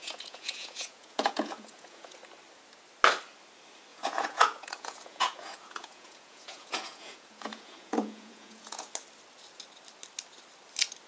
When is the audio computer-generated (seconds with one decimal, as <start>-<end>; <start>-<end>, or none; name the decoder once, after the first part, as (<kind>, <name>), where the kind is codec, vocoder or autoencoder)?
0.0-2.2 (vocoder, Vocos); 3.9-8.9